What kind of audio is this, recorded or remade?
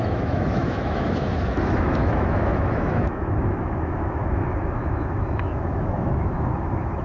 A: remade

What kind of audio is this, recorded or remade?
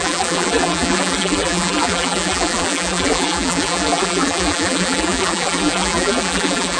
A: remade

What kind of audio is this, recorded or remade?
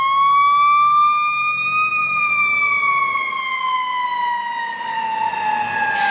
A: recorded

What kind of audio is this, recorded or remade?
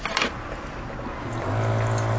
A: recorded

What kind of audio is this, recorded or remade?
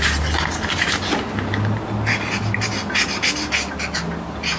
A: recorded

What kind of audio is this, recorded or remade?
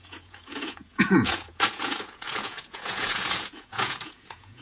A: remade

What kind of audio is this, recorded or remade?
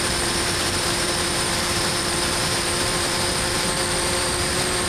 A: remade